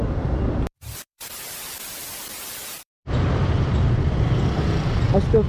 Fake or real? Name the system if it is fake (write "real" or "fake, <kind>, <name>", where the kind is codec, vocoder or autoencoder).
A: fake, vocoder, BigVGAN v2